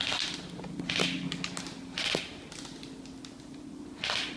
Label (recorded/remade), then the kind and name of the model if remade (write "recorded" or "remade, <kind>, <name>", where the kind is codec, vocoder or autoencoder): recorded